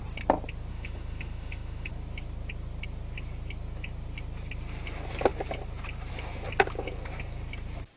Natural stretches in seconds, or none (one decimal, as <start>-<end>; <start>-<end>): 0.0-0.7; 1.9-8.0